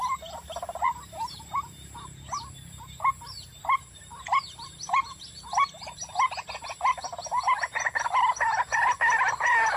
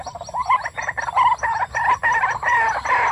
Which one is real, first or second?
first